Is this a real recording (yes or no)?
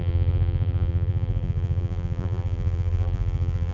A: no